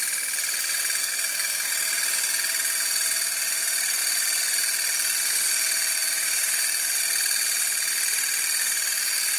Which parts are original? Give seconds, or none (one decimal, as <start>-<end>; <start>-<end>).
0.0-1.0; 1.7-9.4